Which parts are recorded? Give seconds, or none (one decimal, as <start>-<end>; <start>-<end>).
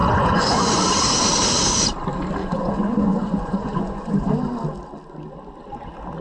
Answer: 0.8-2.4; 4.3-6.2